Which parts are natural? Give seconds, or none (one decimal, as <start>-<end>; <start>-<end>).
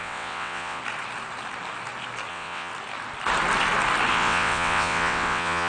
0.8-2.3; 2.7-4.1